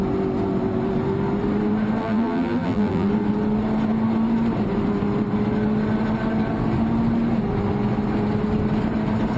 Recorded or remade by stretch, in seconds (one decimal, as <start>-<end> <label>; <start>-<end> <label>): 0.0-2.0 recorded; 2.0-3.1 remade; 3.1-9.4 recorded